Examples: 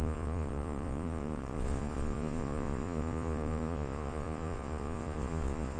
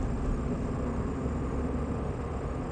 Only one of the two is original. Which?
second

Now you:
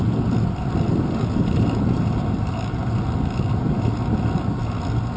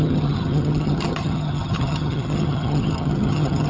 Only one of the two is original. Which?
first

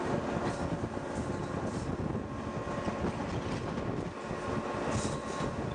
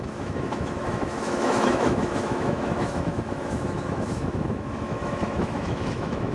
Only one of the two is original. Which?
first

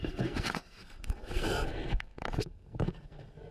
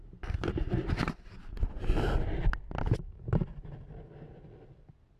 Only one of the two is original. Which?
second